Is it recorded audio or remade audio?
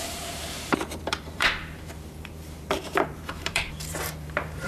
remade